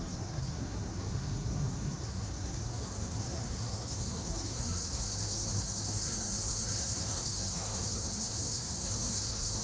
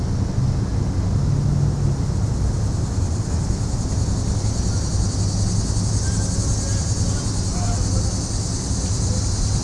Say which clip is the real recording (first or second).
second